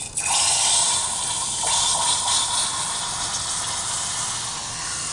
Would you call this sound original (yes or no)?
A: yes